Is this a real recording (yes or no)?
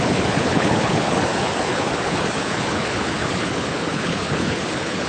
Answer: no